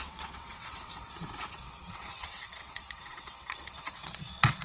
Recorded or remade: remade